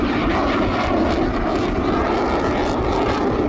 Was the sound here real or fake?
real